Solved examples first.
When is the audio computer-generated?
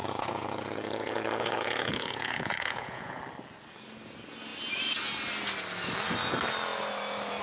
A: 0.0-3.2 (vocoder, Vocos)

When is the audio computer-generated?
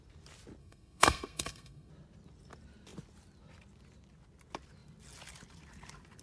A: 0.6-1.9 (codec, SNAC)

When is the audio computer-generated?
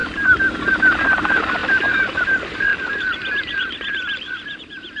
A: 0.8-5.0 (vocoder, BigVGAN v2)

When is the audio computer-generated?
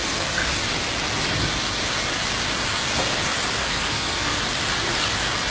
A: 3.6-4.4 (codec, SNAC)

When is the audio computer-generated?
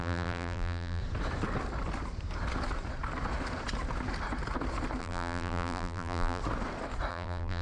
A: 0.0-1.0 (vocoder, BigVGAN v2); 5.0-6.4; 7.1-7.6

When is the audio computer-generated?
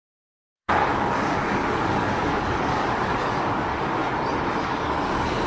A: 0.0-4.0 (codec, DAC); 4.6-5.5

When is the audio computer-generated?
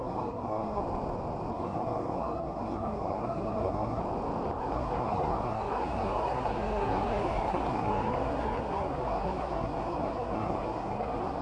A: 0.0-0.8 (codec, SNAC); 1.5-4.0; 4.6-11.4